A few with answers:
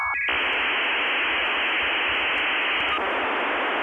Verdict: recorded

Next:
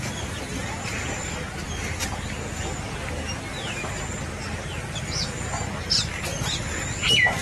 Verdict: recorded